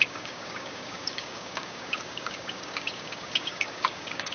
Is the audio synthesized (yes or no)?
yes